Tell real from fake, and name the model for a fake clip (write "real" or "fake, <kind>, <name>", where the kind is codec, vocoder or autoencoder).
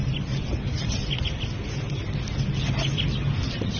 real